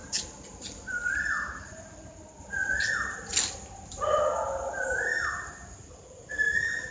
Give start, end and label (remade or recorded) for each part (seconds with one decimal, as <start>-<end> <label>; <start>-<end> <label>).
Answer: 0.0-6.9 recorded